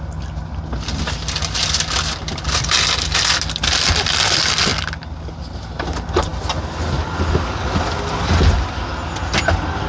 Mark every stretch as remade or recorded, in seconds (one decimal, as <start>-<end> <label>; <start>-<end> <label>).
0.0-9.9 recorded